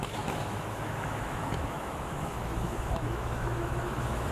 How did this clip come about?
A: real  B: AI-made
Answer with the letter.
B